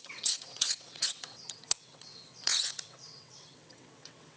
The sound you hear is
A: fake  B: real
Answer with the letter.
A